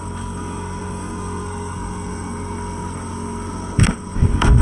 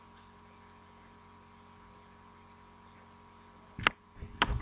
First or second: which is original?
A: second